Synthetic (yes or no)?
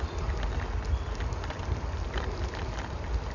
no